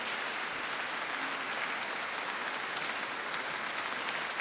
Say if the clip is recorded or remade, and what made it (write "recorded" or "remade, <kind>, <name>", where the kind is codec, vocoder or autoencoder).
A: recorded